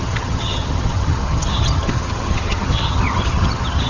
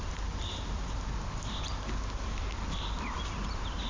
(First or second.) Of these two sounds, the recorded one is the second